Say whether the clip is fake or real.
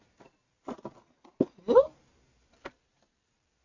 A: real